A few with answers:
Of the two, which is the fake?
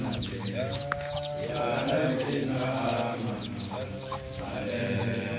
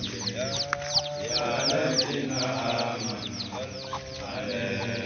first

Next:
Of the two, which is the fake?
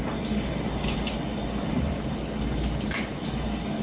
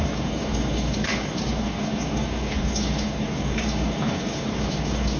second